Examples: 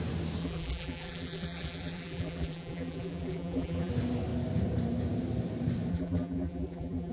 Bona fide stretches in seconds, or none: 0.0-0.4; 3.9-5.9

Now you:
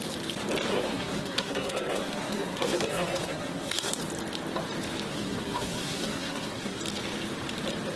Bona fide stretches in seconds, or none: 0.0-0.7; 4.0-5.1; 6.8-8.0

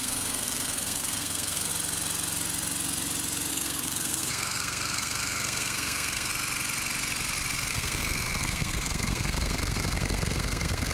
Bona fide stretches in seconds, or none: 1.7-3.5; 6.3-7.7

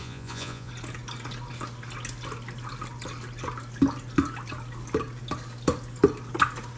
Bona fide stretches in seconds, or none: 0.7-6.8

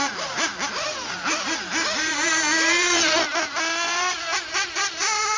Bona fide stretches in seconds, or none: 0.5-2.0; 4.3-5.4